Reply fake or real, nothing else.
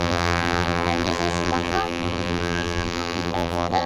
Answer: fake